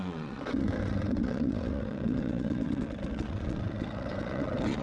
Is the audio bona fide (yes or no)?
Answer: no